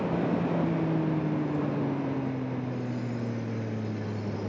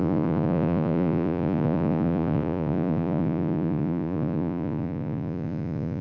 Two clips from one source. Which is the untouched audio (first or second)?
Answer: first